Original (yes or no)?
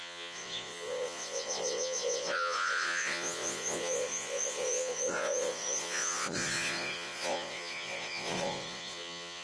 no